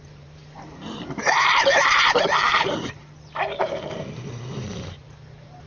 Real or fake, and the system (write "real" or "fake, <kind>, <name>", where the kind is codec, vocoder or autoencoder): fake, vocoder, BigVGAN v2